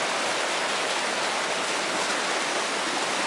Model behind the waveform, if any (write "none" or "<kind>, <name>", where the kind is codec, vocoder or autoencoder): none